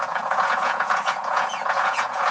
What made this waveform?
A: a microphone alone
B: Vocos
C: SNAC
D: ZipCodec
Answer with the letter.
B